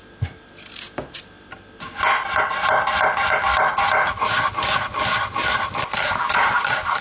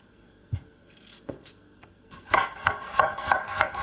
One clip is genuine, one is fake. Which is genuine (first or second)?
first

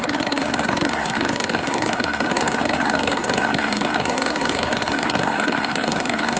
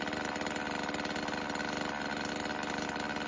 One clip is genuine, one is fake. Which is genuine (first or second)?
second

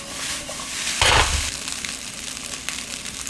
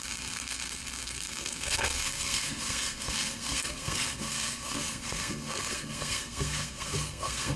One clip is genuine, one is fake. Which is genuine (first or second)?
first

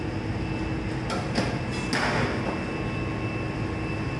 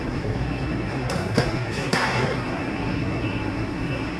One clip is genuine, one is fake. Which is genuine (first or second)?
first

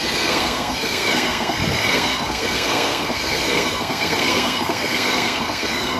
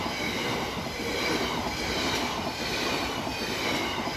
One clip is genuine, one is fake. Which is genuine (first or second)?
second